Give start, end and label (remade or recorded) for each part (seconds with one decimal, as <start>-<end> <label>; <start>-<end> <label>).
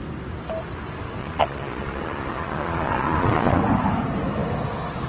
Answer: 0.0-1.2 recorded; 1.2-3.6 remade; 3.6-5.1 recorded